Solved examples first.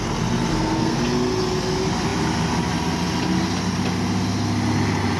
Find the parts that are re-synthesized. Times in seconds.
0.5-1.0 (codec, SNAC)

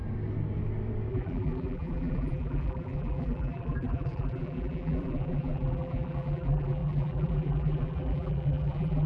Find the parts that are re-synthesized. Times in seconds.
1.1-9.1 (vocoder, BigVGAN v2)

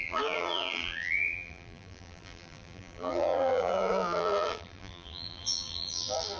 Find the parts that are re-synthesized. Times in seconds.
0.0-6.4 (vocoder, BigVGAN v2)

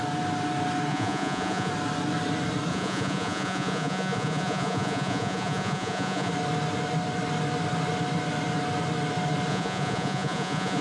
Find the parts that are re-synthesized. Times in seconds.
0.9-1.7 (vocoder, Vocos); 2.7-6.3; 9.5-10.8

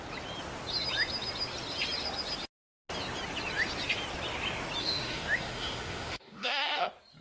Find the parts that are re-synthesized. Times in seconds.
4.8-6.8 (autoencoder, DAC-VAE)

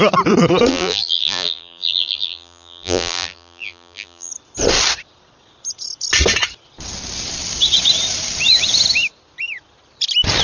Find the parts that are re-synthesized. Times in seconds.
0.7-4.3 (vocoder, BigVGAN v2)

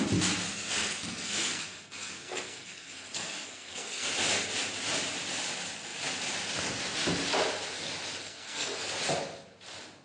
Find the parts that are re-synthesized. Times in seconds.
0.5-4.1 (codec, SNAC); 8.2-8.9